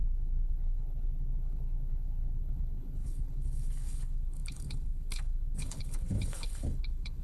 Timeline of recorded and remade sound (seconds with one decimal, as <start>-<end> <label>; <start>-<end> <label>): 0.0-7.2 remade